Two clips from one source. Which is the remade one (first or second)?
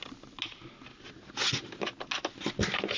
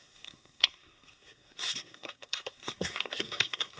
second